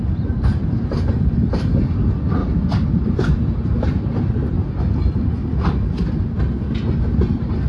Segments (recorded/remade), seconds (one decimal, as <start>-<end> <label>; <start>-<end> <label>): 0.0-0.5 recorded; 0.5-1.1 remade; 1.1-2.4 recorded; 2.4-6.1 remade; 6.1-7.7 recorded